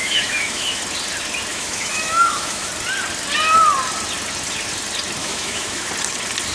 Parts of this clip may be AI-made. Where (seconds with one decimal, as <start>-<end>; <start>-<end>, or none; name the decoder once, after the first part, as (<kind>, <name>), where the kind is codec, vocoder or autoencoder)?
0.0-0.8 (autoencoder, DAC-VAE); 1.5-2.7; 5.2-5.9